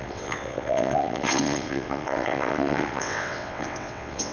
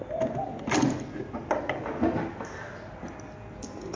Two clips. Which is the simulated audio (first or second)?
first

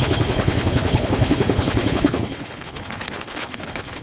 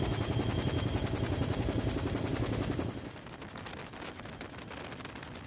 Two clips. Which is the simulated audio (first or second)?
first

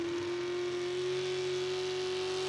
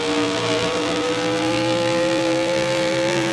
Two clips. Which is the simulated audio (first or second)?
second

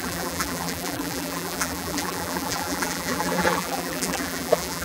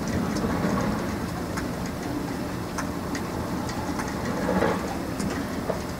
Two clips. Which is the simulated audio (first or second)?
first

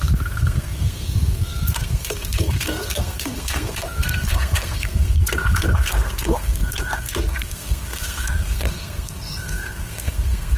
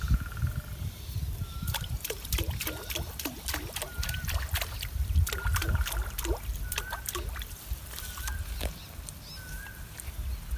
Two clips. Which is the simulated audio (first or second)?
first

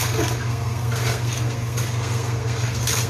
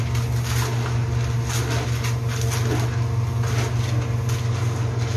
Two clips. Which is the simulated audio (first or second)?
first